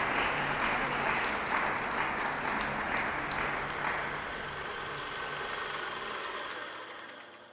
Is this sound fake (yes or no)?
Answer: no